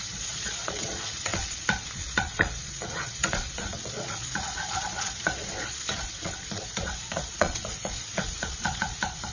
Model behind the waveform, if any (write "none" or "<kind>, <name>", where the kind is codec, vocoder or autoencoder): vocoder, Vocos